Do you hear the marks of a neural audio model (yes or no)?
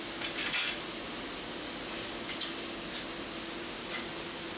no